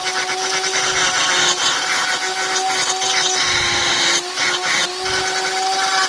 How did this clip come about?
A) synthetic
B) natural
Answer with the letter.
B